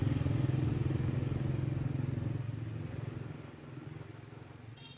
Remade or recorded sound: recorded